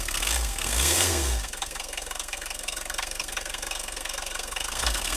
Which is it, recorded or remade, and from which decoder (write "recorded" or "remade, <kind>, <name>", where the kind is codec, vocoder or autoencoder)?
remade, codec, SNAC